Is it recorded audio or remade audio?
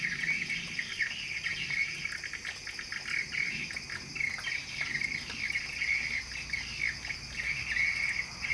recorded